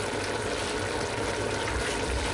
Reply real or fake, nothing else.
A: real